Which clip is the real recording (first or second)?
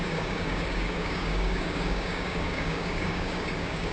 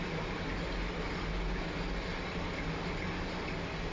second